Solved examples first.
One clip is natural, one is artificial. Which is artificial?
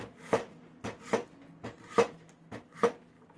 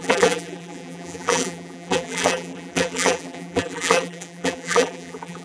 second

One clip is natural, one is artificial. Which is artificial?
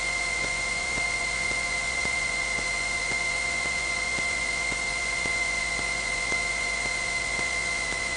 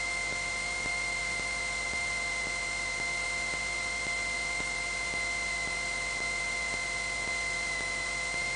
first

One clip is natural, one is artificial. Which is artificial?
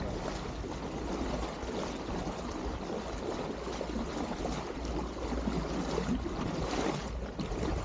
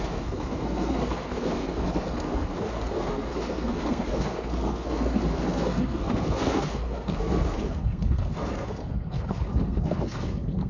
second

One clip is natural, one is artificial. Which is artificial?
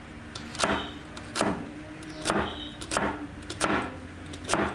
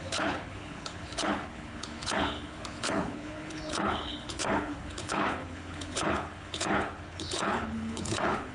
second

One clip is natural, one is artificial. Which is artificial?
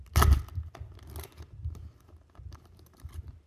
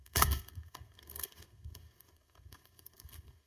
second